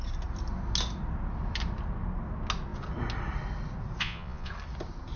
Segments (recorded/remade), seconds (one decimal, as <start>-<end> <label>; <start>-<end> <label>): 0.0-4.0 recorded; 4.0-4.5 remade; 4.5-5.2 recorded